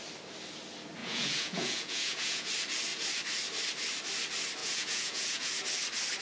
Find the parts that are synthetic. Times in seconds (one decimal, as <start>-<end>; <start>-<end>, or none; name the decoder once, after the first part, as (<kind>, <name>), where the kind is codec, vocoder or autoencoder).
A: 1.0-2.5 (vocoder, Vocos); 4.6-5.5